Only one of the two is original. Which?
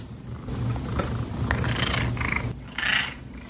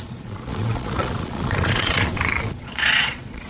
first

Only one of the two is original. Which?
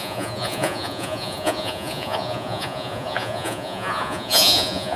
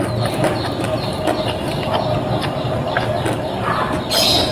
second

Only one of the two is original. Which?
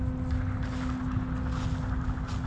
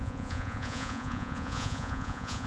first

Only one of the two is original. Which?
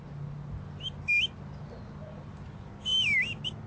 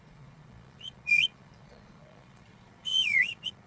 first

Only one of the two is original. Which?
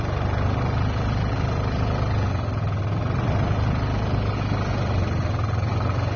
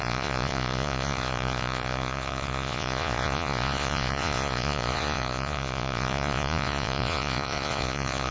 first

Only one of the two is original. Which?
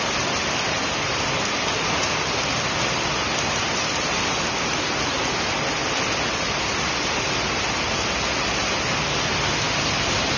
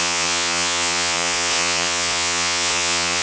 first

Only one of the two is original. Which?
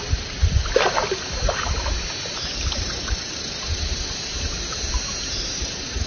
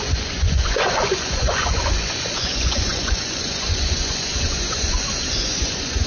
first